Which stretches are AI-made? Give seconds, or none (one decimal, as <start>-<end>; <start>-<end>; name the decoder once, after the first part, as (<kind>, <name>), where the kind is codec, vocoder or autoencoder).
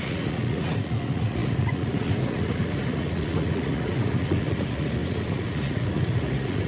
0.0-6.7 (vocoder, Vocos)